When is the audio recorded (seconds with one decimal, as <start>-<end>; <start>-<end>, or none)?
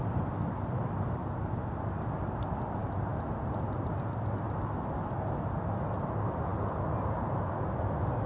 0.0-8.3